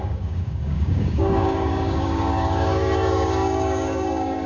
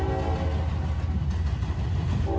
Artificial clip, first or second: first